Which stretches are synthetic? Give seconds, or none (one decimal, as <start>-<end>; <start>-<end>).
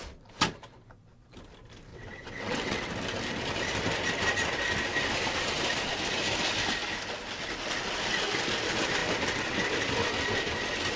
1.9-2.9